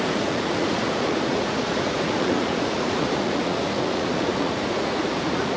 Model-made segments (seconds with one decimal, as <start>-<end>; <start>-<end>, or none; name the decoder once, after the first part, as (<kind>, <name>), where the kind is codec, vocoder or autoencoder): 0.0-5.6 (vocoder, Vocos)